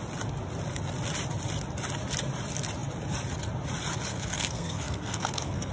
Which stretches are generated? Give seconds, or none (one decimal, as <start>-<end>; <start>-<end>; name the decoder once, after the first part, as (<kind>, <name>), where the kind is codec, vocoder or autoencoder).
4.1-5.7 (codec, SNAC)